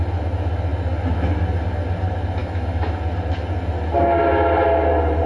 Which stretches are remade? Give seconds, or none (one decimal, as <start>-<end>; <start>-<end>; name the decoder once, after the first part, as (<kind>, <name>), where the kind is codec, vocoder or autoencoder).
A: 2.4-3.0 (autoencoder, DAC-VAE)